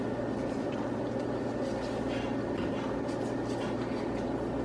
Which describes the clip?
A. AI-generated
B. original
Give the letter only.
B